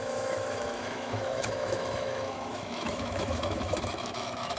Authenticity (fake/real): fake